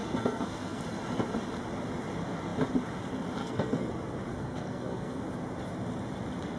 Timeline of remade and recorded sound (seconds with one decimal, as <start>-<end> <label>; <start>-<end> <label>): 0.0-0.8 remade; 0.8-3.4 recorded; 3.4-3.9 remade; 3.9-4.3 recorded; 4.3-5.2 remade; 5.2-6.6 recorded